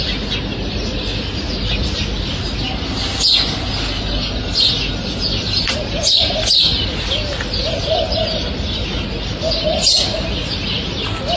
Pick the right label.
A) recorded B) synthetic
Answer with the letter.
A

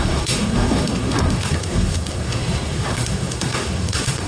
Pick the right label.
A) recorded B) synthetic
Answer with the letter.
B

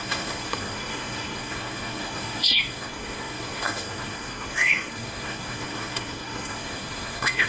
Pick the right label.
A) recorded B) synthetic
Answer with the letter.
B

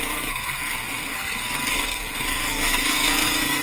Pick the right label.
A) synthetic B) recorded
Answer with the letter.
A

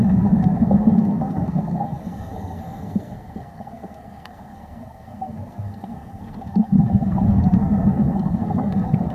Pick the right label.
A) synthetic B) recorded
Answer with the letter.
A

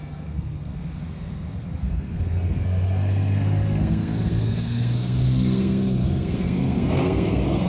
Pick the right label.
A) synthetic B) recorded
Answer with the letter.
A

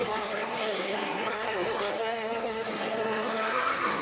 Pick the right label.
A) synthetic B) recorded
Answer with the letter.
A